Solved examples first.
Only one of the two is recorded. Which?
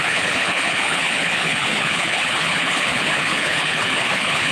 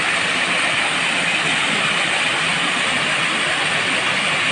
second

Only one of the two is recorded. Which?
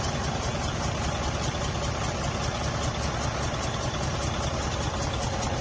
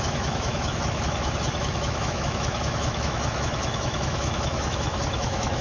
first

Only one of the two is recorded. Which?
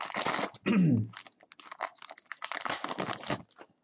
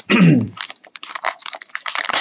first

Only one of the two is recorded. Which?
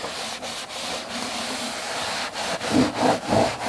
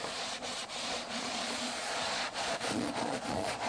first